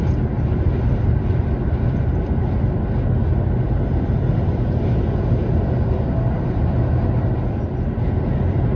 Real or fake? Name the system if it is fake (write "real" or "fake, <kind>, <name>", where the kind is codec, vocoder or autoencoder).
real